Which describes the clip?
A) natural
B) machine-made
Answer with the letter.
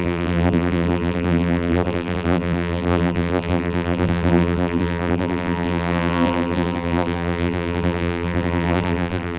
B